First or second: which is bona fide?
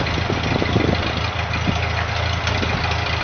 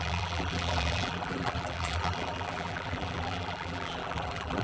first